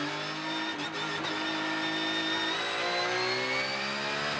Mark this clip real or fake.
real